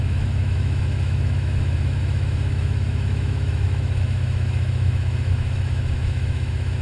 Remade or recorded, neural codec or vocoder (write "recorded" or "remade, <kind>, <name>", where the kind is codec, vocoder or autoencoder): remade, autoencoder, DAC-VAE